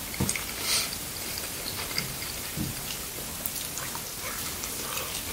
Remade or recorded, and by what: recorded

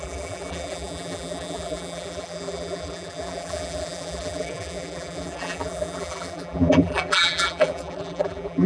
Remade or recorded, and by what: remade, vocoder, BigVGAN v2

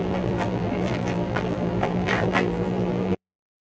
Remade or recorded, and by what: remade, vocoder, BigVGAN v2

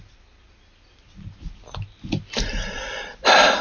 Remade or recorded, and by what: recorded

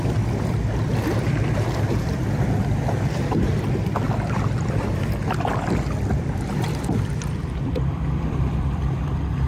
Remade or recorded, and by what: remade, vocoder, BigVGAN v2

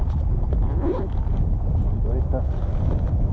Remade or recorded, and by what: recorded